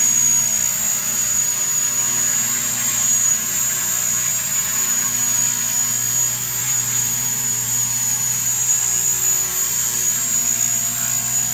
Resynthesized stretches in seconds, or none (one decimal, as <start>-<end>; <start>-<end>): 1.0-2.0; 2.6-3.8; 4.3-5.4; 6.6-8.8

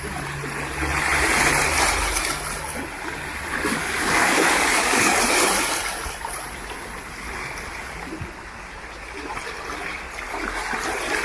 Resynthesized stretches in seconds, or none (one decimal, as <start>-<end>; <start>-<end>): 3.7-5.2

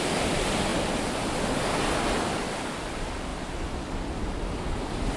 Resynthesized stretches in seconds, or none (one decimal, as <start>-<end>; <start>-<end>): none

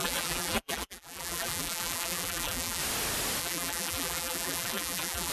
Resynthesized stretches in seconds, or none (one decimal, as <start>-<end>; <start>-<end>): 0.0-2.8; 3.4-5.3

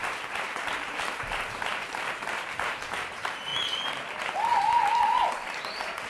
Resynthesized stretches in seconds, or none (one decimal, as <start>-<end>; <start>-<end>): 0.0-3.5; 4.3-6.1